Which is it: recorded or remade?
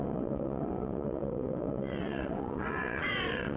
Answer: remade